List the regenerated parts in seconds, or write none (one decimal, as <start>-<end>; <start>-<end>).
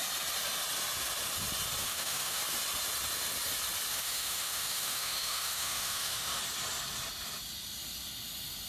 1.8-2.4; 3.9-6.4